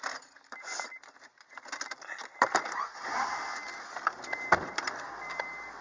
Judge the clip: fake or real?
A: real